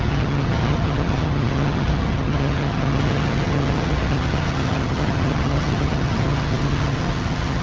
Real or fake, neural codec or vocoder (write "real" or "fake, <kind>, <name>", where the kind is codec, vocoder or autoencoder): fake, vocoder, HiFi-GAN